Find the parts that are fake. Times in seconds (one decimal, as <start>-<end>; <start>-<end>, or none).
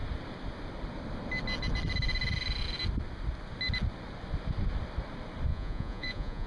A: 5.5-6.5